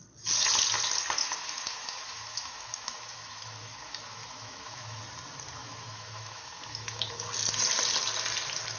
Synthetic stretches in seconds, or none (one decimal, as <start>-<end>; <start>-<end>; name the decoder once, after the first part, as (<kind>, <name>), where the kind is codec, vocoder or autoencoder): 1.2-5.0 (autoencoder, DAC-VAE); 5.6-7.1